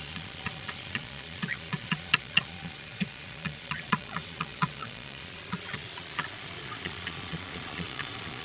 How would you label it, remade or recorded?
remade